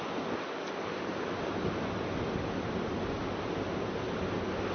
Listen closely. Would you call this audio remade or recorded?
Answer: recorded